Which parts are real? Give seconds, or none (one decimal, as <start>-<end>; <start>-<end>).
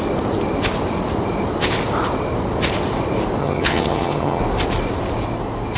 0.0-3.4; 4.4-5.8